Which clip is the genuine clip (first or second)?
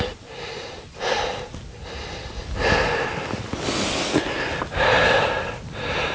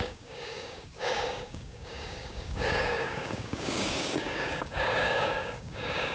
first